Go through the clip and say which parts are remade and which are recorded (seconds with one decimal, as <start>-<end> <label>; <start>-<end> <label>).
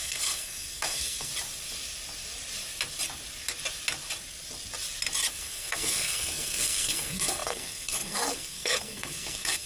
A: 0.0-1.3 remade; 1.3-5.3 recorded; 5.3-9.7 remade